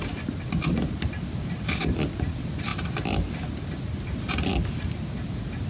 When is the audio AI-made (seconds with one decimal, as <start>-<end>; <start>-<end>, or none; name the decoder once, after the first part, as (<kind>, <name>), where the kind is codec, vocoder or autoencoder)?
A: none